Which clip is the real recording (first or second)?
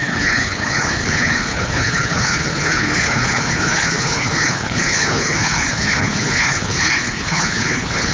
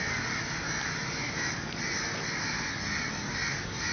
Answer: second